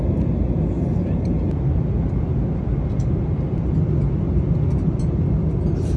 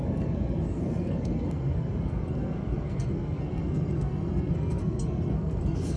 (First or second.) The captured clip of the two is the first